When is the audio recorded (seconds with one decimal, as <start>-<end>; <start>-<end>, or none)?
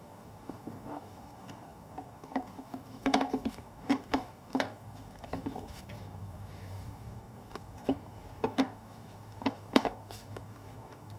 none